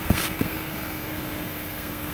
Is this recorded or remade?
remade